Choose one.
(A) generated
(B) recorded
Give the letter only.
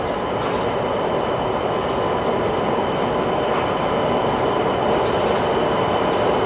B